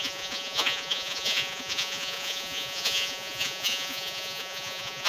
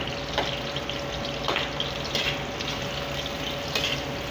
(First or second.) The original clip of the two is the second